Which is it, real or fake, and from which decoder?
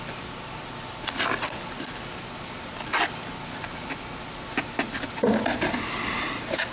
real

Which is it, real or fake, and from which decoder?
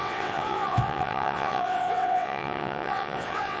fake, vocoder, WaveNeXt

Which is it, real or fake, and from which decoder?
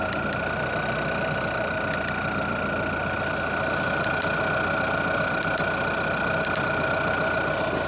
real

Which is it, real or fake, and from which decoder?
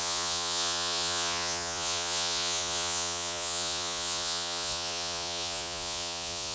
fake, vocoder, Vocos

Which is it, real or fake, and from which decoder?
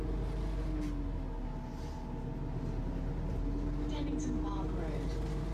real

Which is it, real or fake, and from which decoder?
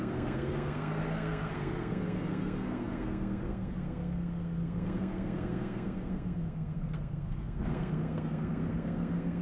fake, codec, SNAC